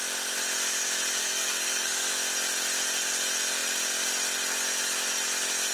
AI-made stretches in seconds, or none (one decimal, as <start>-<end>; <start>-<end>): 1.2-2.1